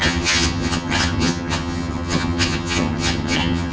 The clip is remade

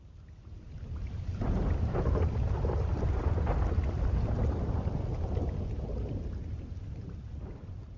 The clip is recorded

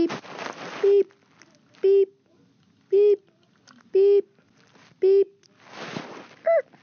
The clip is recorded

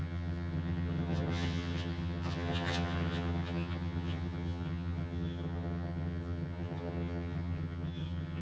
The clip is remade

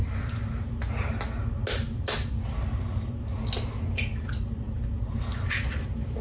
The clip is recorded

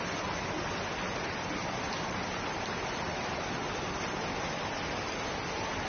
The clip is recorded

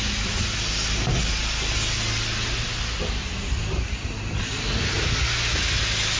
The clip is recorded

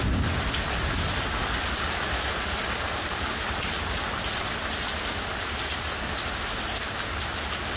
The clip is recorded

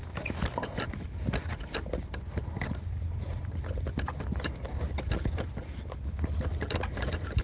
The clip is recorded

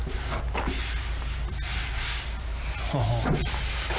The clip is recorded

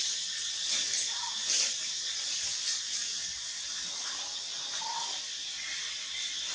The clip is recorded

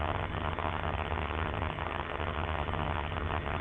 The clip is remade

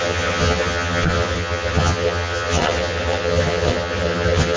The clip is remade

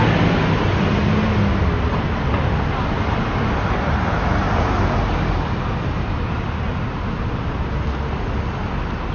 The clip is recorded